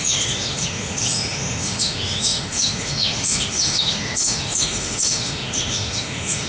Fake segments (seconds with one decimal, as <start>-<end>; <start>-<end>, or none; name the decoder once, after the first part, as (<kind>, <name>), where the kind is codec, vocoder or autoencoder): 0.0-6.5 (autoencoder, DAC-VAE)